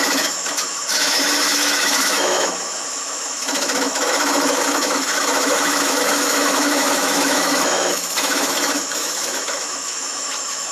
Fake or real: fake